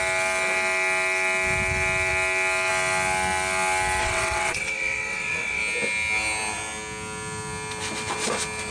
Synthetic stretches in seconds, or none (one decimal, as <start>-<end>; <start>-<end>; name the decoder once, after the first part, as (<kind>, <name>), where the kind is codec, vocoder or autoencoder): 4.0-5.6 (vocoder, WaveNeXt)